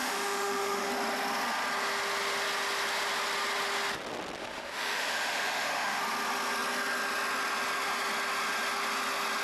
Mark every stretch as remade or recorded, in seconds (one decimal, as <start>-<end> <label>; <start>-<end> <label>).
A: 0.0-0.9 remade; 0.9-4.4 recorded; 4.4-6.0 remade; 6.0-9.4 recorded